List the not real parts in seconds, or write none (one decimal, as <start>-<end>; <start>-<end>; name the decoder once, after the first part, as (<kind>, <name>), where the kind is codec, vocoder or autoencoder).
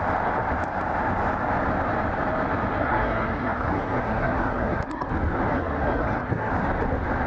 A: 2.8-5.1 (codec, SNAC); 5.5-6.5